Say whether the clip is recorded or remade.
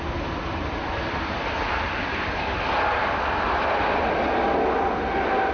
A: recorded